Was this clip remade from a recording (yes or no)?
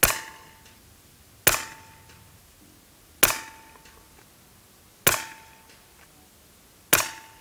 no